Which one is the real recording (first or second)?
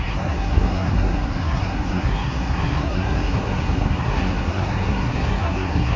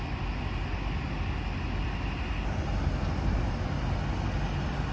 second